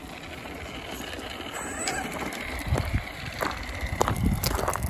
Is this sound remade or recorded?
recorded